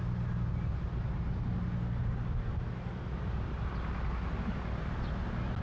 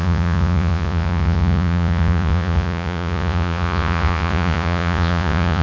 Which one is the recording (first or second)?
first